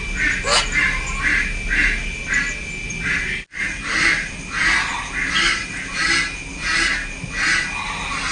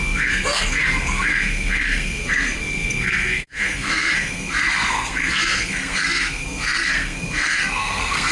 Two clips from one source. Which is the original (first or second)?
first